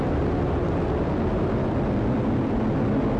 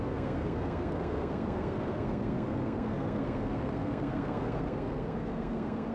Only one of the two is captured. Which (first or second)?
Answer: first